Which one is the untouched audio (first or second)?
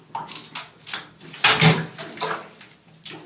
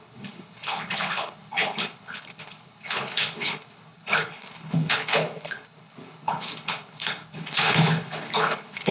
first